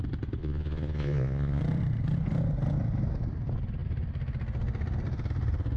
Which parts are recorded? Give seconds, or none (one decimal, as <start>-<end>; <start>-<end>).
0.0-0.4; 1.6-5.8